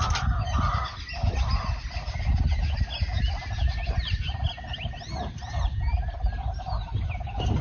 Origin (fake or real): real